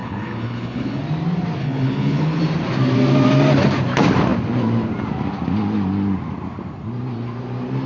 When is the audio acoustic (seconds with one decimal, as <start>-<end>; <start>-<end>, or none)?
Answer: 1.0-1.6; 2.4-7.9